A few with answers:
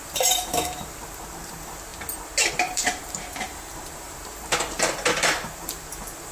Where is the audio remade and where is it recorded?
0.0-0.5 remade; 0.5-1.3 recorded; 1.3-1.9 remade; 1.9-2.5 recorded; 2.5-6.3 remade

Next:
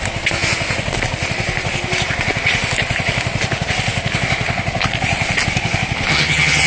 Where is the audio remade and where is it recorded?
0.0-6.1 recorded; 6.1-6.7 remade